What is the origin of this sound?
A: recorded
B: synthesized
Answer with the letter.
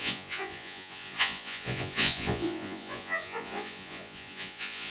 B